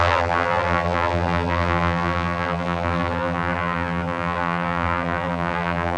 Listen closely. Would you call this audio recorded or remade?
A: remade